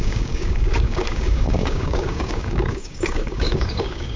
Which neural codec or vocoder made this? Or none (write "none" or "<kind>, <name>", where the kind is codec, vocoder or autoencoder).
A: codec, DAC